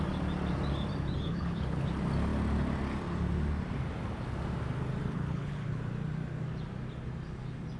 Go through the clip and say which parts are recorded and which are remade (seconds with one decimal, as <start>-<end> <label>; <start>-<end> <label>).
0.0-1.3 recorded; 1.3-1.8 remade; 1.8-5.0 recorded; 5.0-5.8 remade; 5.8-7.8 recorded